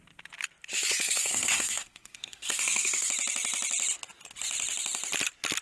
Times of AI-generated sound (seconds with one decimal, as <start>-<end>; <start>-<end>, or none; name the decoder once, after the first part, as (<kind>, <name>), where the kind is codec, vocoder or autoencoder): 0.7-3.1 (codec, SNAC)